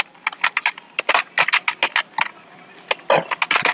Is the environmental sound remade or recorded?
recorded